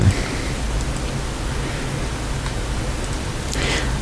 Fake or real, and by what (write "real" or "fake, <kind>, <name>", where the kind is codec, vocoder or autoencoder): real